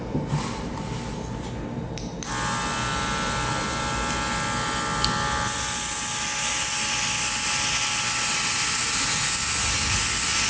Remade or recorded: recorded